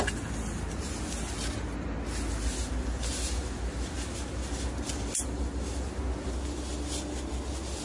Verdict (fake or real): real